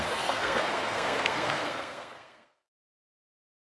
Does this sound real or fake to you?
fake